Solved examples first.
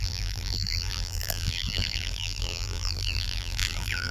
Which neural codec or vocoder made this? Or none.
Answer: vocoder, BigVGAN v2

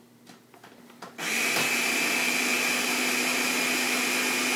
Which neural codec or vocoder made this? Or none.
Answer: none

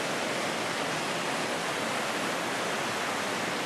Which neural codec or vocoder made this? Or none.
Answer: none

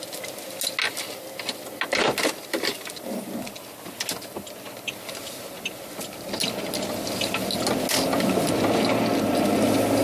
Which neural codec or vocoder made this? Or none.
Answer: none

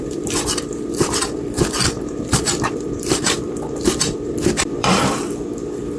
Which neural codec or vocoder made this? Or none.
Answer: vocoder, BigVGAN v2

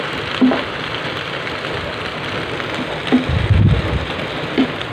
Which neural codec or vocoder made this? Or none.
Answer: none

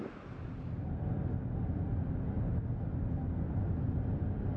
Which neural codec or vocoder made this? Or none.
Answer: none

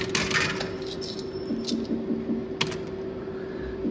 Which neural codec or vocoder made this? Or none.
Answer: none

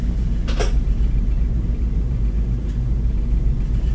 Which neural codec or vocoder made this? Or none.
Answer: vocoder, BigVGAN v2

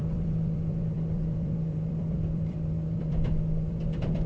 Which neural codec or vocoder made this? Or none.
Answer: vocoder, BigVGAN v2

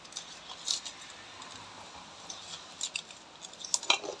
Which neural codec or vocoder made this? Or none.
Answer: none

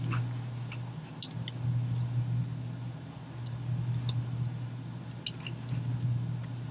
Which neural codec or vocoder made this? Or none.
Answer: none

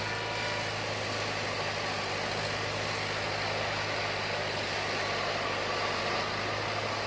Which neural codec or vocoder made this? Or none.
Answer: none